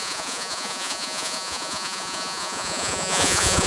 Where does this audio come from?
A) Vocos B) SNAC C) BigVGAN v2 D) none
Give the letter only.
A